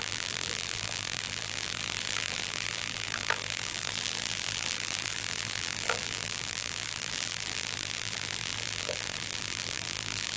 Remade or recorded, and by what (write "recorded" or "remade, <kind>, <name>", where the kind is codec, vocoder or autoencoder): remade, vocoder, BigVGAN v2